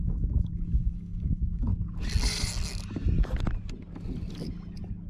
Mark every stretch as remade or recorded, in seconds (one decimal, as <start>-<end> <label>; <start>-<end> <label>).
0.0-1.7 remade; 1.7-5.1 recorded